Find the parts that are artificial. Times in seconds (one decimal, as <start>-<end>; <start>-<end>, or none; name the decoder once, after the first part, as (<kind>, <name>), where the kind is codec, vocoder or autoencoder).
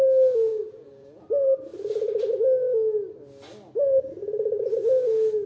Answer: 0.5-1.2 (vocoder, Vocos)